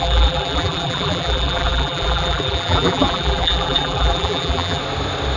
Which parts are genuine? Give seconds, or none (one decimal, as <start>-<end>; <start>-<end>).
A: 4.8-5.4